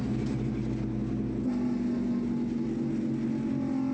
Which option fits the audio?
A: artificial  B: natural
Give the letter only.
B